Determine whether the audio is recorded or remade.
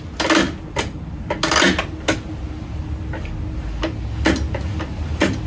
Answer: recorded